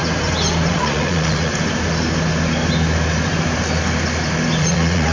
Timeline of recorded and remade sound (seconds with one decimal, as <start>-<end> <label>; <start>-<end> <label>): 0.0-0.7 recorded; 0.7-1.5 remade; 1.5-4.6 recorded; 4.6-5.1 remade